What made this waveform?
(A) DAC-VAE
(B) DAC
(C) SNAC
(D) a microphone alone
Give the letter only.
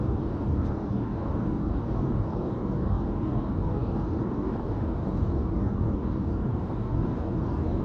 B